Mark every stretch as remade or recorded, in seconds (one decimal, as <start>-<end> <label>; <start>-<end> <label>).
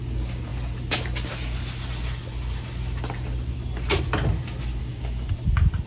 0.0-4.8 recorded; 4.8-5.3 remade; 5.3-5.9 recorded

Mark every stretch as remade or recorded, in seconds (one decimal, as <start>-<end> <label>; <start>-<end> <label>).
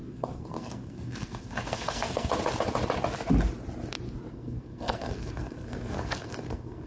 0.0-2.3 remade; 2.3-4.3 recorded; 4.3-6.9 remade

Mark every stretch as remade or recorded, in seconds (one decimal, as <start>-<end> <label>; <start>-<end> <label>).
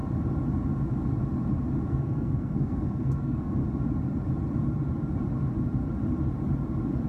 0.0-1.9 recorded; 1.9-3.6 remade; 3.6-7.1 recorded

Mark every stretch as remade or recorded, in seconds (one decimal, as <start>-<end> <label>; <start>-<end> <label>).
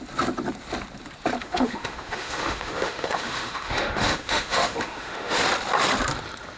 0.0-1.4 recorded; 1.4-5.4 remade; 5.4-6.6 recorded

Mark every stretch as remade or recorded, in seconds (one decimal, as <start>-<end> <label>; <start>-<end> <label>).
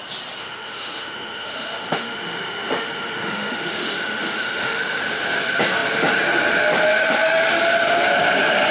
0.0-0.4 recorded; 0.4-5.0 remade; 5.0-7.0 recorded; 7.0-7.6 remade; 7.6-8.7 recorded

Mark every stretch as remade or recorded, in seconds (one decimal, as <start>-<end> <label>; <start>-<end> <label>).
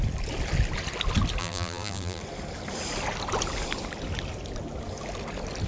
0.0-1.4 recorded; 1.4-2.2 remade; 2.2-5.7 recorded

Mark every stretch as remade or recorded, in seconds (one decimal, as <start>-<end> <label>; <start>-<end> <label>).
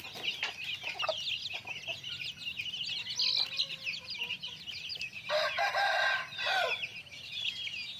0.0-8.0 recorded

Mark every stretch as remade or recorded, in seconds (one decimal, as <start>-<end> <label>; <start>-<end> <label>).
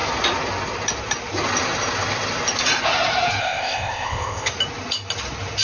0.0-3.4 recorded; 3.4-4.5 remade; 4.5-5.6 recorded